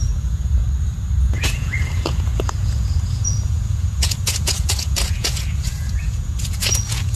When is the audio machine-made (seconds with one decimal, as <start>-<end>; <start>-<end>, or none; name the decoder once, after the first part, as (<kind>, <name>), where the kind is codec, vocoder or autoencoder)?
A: 0.0-0.6 (vocoder, Vocos); 1.2-7.2